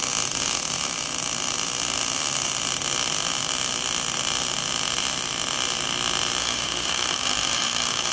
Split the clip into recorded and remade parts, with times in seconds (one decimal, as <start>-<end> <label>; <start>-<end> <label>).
0.0-6.4 recorded; 6.4-8.1 remade